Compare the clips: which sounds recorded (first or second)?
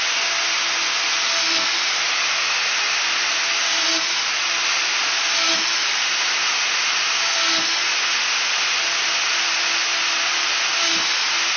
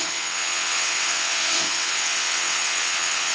first